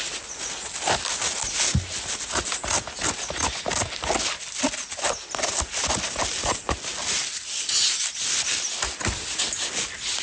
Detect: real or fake real